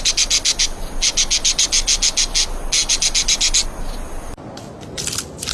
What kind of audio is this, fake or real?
real